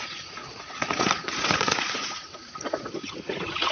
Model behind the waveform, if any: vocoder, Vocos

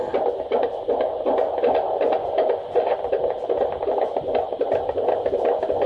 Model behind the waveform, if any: none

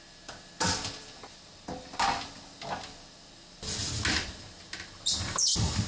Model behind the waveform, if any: none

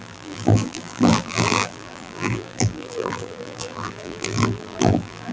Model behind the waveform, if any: vocoder, BigVGAN v2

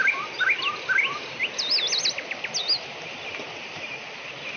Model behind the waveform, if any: none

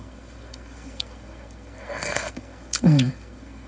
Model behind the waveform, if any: codec, SNAC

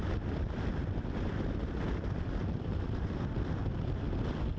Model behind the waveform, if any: none